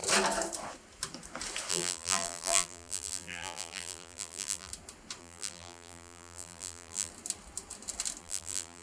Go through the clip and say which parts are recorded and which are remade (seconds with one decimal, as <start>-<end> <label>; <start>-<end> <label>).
0.0-1.7 recorded; 1.7-4.7 remade; 4.7-5.2 recorded; 5.2-7.1 remade; 7.1-8.2 recorded; 8.2-8.8 remade